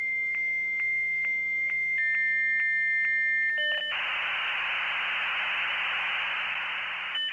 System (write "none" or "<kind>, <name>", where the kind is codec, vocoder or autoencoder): none